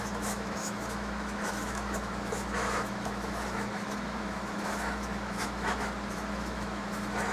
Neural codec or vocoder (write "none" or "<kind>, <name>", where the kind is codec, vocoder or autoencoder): autoencoder, DAC-VAE